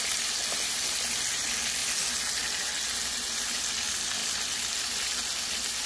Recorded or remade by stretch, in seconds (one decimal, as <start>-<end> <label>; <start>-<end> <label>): 0.0-5.9 recorded